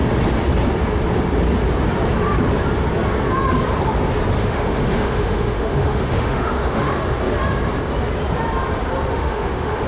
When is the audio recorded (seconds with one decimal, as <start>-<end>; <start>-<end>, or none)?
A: 0.0-4.4; 7.0-9.1